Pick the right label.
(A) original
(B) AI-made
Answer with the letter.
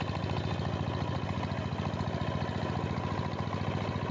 A